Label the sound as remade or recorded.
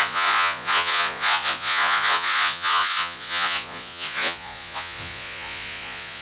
remade